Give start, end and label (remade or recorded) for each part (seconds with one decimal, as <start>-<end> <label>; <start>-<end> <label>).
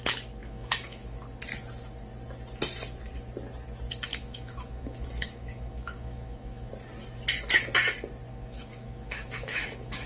0.0-0.4 recorded; 0.4-1.2 remade; 1.2-4.1 recorded; 4.1-6.7 remade; 6.7-8.3 recorded; 8.3-10.1 remade